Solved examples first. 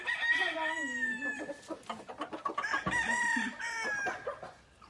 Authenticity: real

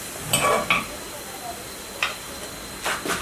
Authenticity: real